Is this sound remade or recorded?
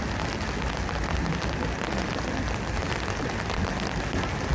recorded